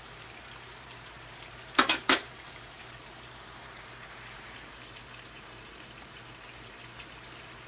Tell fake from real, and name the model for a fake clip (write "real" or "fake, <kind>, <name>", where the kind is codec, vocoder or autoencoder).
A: fake, vocoder, BigVGAN v2